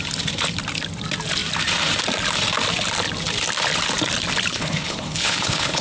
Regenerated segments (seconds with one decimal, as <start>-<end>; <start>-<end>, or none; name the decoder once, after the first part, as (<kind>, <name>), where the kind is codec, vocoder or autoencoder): 4.5-5.8 (codec, HILCodec)